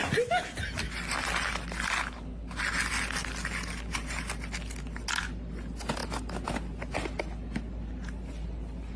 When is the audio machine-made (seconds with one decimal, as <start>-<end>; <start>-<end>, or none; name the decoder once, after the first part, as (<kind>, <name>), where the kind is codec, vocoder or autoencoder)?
2.0-2.6 (codec, HILCodec)